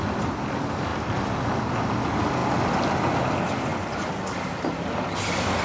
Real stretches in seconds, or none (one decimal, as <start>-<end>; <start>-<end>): 0.0-5.6

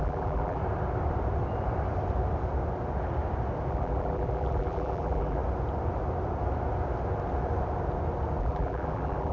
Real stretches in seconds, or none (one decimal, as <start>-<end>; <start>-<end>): 0.6-3.7; 5.4-8.4

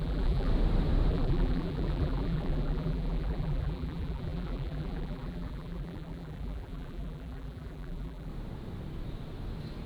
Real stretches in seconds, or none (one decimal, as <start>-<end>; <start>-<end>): 0.5-1.1; 8.3-9.9

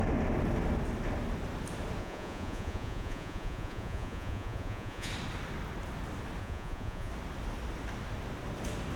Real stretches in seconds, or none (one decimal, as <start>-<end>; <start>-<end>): 0.0-2.0; 5.1-6.4; 7.1-9.0